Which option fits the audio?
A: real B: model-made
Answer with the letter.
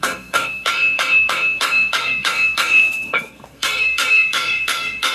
B